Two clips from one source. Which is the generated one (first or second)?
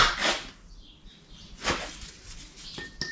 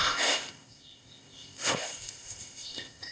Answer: second